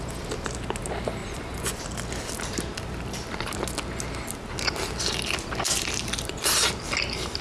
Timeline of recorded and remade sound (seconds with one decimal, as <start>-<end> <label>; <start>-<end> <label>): 0.0-1.2 recorded; 1.2-1.8 remade; 1.8-7.4 recorded